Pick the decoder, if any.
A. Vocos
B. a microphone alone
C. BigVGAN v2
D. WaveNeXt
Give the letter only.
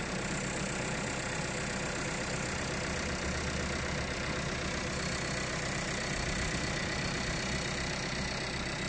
B